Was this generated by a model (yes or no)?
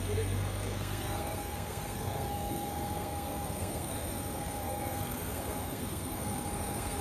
yes